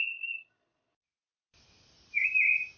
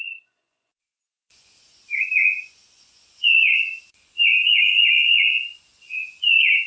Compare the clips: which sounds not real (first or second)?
second